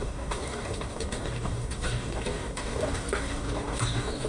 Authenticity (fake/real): fake